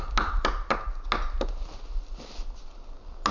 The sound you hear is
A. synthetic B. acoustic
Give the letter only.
B